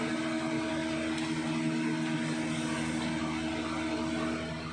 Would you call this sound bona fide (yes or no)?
yes